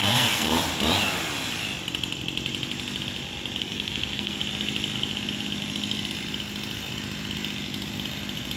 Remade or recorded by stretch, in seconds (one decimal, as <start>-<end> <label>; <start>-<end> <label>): 0.0-0.5 remade; 0.5-3.6 recorded; 3.6-4.4 remade; 4.4-8.6 recorded